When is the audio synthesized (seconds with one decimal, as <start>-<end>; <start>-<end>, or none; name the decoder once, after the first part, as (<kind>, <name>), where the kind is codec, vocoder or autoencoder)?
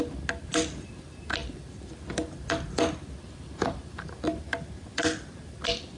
none